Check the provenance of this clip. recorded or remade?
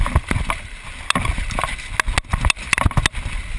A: recorded